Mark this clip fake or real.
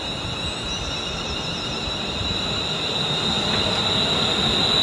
real